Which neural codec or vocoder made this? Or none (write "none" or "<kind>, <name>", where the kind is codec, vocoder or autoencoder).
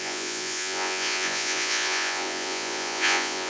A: vocoder, Vocos